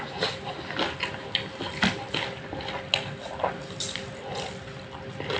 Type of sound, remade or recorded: recorded